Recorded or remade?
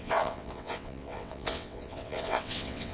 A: remade